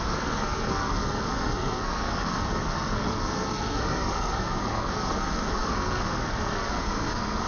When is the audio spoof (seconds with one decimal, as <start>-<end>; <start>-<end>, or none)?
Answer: 0.0-7.5